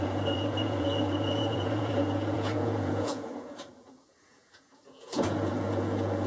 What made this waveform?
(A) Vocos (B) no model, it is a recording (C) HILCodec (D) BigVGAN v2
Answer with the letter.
A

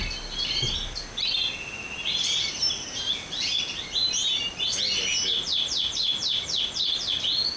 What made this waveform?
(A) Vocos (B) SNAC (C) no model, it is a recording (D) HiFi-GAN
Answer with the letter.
C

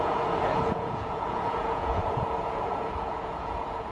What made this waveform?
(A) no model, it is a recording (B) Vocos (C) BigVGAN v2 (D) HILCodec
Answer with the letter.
B